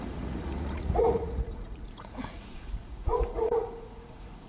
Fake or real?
fake